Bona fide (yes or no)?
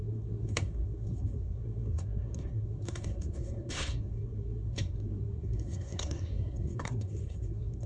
no